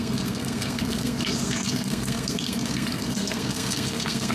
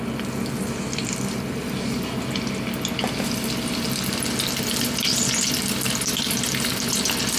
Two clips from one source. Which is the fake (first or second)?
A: first